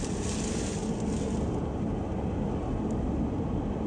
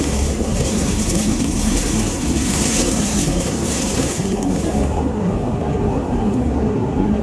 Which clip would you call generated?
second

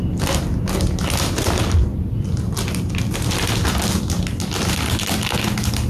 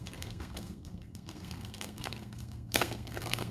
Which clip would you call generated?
second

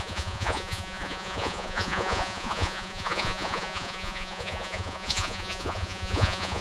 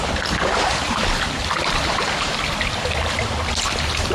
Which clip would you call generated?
first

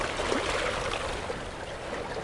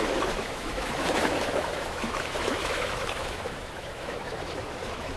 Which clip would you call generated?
second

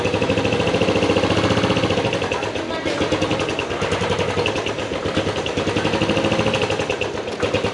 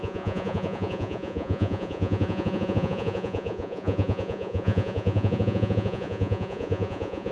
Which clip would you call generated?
second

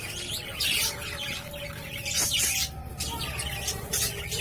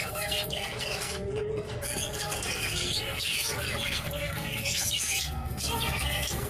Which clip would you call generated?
second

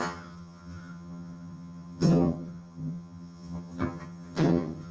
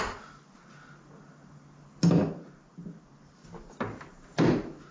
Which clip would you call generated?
first